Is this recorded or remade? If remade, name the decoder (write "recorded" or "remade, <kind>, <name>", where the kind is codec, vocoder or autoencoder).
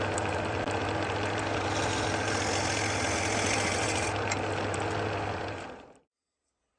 recorded